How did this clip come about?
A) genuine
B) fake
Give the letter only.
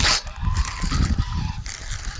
A